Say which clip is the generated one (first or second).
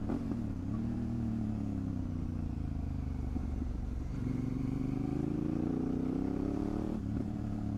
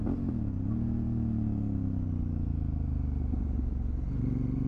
first